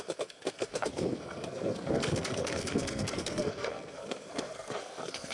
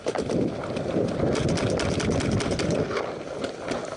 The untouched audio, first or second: second